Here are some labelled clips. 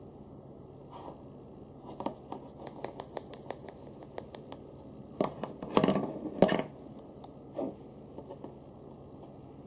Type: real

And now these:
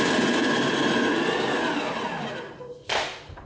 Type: real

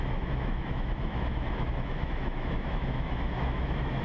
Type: fake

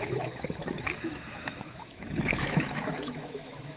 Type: fake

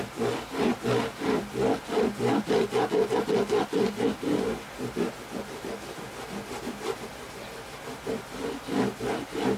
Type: real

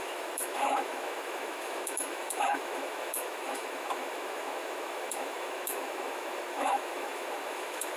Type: fake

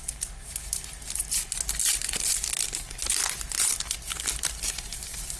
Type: real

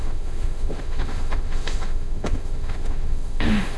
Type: fake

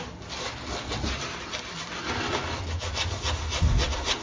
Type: real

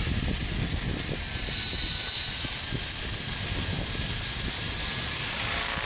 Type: real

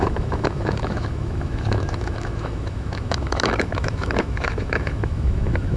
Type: fake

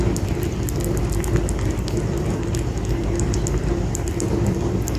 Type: real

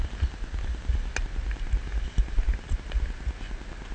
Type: real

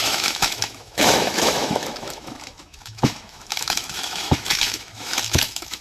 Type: fake